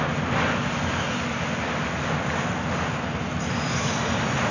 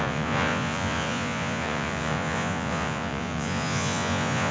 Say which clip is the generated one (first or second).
second